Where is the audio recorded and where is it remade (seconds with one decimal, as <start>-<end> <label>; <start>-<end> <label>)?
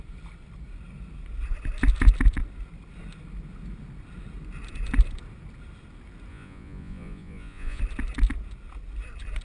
0.0-6.3 recorded; 6.3-7.8 remade; 7.8-9.4 recorded